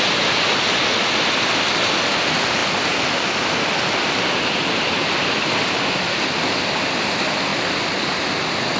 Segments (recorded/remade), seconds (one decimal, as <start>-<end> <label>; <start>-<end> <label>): 0.0-8.8 recorded